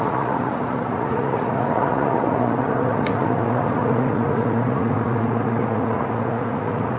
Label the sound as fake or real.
fake